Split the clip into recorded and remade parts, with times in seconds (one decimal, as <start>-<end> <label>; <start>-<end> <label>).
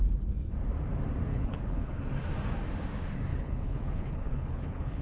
0.0-1.3 recorded; 1.3-2.0 remade; 2.0-3.3 recorded; 3.3-5.0 remade